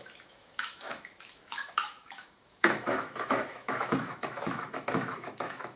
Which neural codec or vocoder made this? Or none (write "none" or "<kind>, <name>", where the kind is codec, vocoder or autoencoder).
autoencoder, DAC-VAE